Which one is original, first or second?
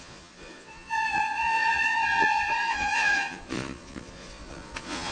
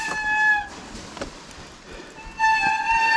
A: second